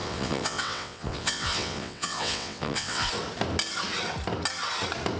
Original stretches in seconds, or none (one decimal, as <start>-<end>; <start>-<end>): 3.1-5.2